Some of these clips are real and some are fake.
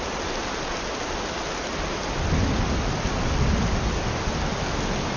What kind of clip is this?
real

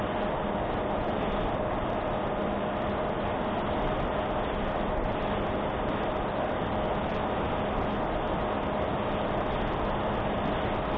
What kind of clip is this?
real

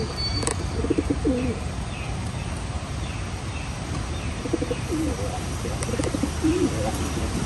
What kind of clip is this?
real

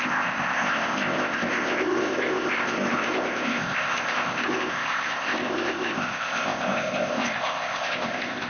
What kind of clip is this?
fake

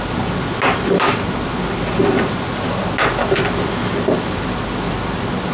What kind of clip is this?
real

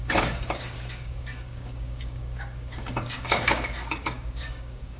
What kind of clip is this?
fake